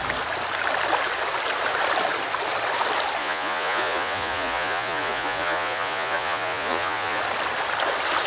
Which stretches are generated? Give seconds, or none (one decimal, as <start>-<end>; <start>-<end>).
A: 3.2-7.2